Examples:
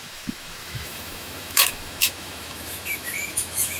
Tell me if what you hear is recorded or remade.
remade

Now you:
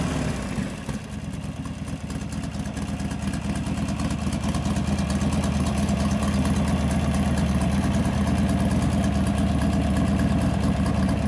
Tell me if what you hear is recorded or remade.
recorded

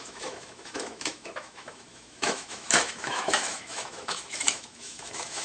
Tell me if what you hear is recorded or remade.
remade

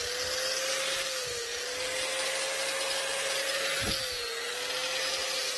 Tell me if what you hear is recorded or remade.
recorded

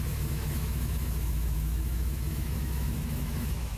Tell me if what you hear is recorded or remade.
remade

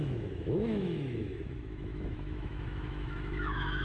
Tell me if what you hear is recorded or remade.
remade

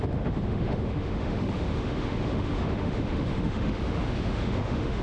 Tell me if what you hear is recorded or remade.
remade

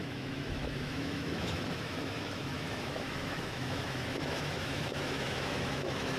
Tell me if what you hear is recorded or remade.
remade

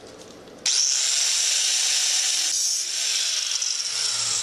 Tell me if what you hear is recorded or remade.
recorded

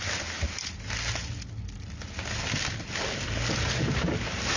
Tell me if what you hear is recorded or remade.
recorded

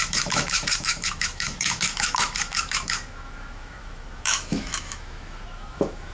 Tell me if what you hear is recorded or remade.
remade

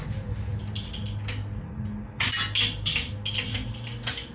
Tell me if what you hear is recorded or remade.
recorded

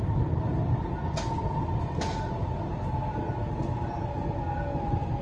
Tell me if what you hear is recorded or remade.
recorded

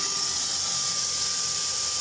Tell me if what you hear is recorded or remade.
recorded